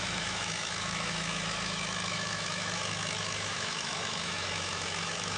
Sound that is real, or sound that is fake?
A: fake